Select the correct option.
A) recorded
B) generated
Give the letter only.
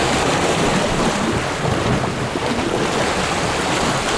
A